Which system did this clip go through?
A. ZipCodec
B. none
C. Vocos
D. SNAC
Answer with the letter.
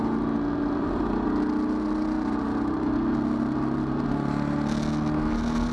B